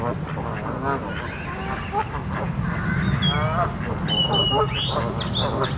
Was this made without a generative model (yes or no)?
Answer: yes